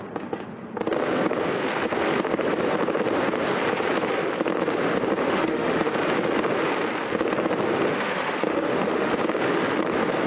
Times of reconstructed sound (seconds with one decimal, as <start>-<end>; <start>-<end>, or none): 5.2-5.9; 7.9-9.1